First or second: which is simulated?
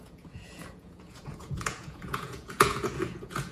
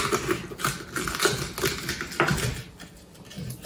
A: first